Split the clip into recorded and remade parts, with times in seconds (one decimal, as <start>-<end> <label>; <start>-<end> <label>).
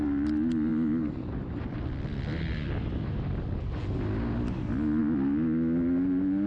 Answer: 0.0-6.5 recorded